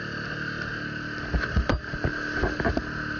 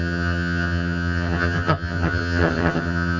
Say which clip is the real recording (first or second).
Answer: first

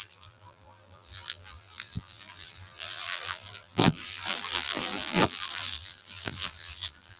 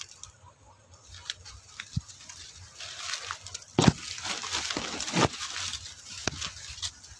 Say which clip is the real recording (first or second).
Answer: second